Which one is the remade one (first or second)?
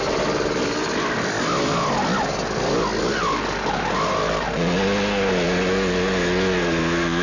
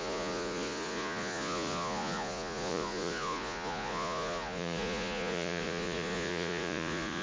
second